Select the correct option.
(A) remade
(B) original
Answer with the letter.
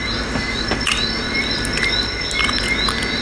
B